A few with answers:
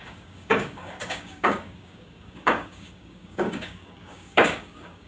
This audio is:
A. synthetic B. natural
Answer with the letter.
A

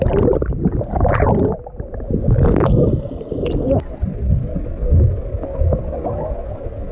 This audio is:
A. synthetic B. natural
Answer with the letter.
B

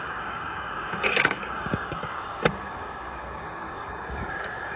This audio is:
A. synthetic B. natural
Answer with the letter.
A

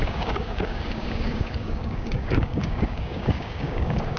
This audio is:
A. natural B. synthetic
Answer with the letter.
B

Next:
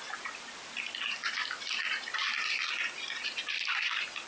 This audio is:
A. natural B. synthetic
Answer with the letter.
A